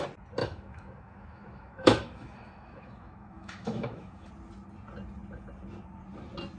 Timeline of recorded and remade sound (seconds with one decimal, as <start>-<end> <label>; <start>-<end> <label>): 0.0-0.4 recorded; 0.4-4.3 remade; 4.3-6.6 recorded